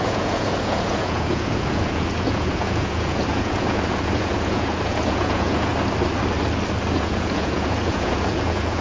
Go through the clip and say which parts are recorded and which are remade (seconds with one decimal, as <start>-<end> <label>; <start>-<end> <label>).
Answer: 0.0-5.7 remade; 5.7-6.9 recorded; 6.9-8.8 remade